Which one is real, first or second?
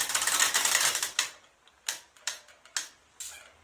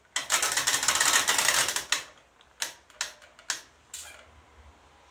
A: second